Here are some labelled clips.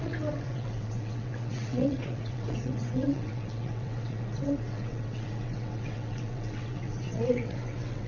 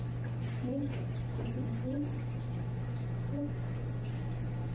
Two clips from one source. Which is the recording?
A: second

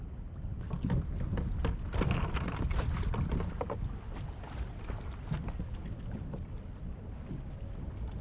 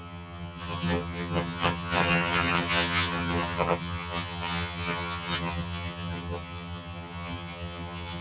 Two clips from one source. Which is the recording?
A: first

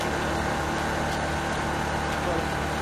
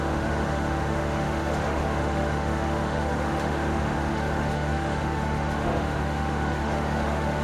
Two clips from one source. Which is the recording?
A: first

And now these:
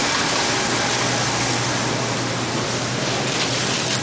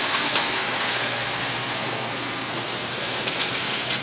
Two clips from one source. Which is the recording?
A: first